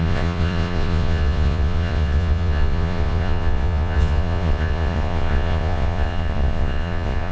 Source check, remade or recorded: remade